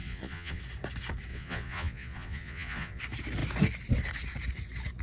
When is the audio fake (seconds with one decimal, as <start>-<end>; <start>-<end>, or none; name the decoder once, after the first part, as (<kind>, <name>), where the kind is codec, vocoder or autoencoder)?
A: 0.0-0.6 (vocoder, Vocos); 1.3-3.0